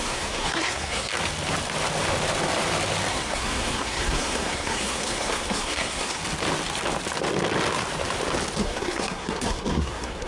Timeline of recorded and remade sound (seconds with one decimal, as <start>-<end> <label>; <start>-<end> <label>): 0.0-1.1 remade; 1.1-3.1 recorded; 3.1-6.2 remade; 6.2-8.6 recorded; 8.6-10.3 remade

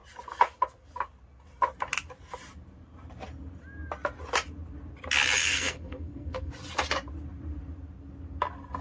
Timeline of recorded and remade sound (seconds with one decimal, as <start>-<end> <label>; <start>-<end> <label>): 0.0-5.4 recorded; 5.4-6.5 remade; 6.5-8.8 recorded